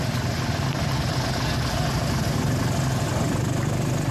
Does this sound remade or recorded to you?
recorded